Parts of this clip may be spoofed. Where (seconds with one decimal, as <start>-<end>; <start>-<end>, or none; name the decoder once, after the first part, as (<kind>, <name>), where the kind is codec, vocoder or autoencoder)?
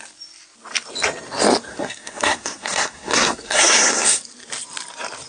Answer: 1.7-4.2 (codec, SNAC)